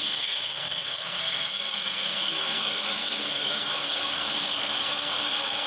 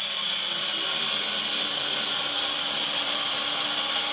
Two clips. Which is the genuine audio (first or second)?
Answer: second